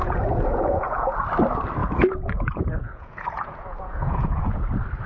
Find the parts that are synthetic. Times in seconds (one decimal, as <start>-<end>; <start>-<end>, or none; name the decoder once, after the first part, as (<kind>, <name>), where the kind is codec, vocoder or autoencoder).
0.0-1.2 (vocoder, Vocos); 1.8-4.6